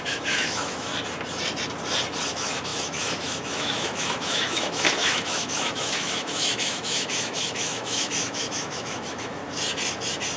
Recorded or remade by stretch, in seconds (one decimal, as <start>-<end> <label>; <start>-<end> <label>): 0.0-0.9 remade; 0.9-2.3 recorded; 2.3-9.4 remade; 9.4-10.4 recorded